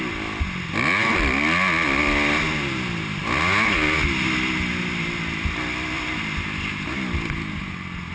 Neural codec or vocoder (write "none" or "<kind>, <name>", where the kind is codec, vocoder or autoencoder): none